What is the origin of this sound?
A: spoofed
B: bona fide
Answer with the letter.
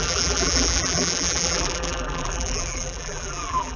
A